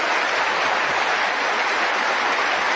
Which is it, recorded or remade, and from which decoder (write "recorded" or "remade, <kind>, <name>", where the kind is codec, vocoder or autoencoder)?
recorded